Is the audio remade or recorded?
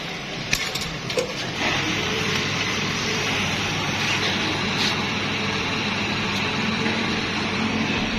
remade